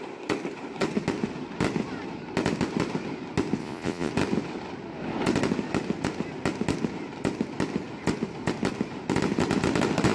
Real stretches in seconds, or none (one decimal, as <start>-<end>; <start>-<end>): 0.0-3.6; 4.1-10.1